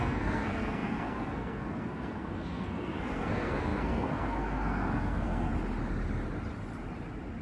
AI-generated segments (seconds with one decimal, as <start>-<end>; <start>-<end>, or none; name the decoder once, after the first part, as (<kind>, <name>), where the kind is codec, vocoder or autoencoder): 0.0-5.5 (codec, SNAC)